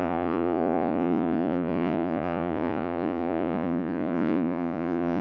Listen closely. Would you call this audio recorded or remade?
remade